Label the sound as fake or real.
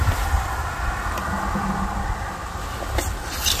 real